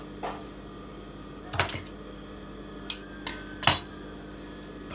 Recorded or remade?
recorded